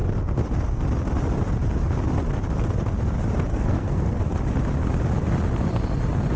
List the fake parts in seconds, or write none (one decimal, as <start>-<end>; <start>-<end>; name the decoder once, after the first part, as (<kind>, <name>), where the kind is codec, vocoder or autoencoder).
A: 3.5-4.2 (codec, SNAC)